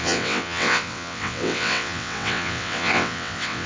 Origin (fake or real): fake